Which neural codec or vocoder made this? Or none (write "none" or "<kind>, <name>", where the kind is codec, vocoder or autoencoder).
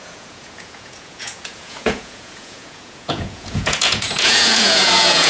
vocoder, Vocos